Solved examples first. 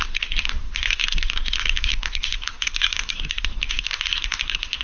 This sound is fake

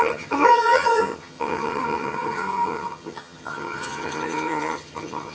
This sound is fake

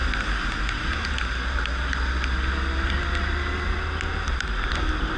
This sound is real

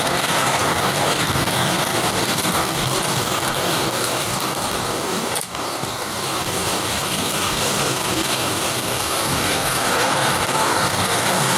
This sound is fake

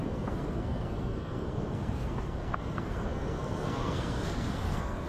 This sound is fake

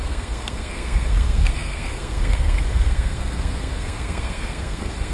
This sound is fake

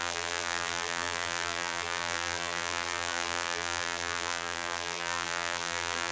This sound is fake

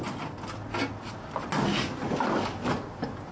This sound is real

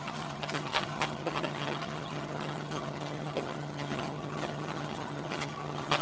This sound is fake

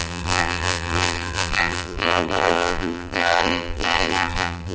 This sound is fake